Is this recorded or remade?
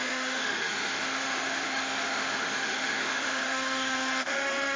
remade